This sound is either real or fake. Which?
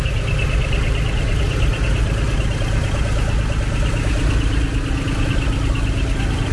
real